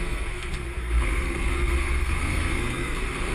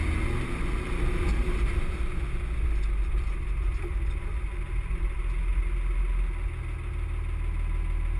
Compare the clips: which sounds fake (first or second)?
first